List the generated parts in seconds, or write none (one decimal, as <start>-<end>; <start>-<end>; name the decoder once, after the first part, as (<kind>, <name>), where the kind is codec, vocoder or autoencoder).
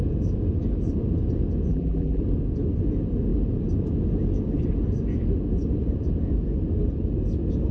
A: 1.7-2.2 (vocoder, BigVGAN v2)